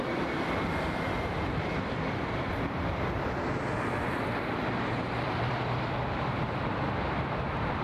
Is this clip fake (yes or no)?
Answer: yes